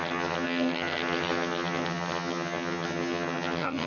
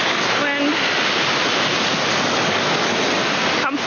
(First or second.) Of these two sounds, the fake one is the first